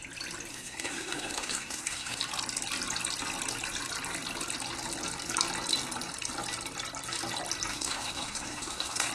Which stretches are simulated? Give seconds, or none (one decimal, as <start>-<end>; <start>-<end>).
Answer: 0.5-2.2; 7.7-9.1